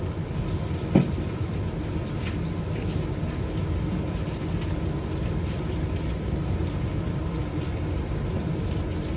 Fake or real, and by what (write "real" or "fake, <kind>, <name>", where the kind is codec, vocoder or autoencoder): real